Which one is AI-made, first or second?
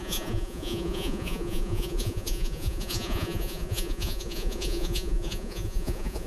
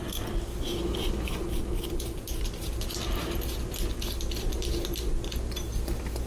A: first